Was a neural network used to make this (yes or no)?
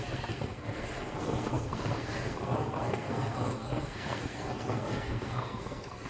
yes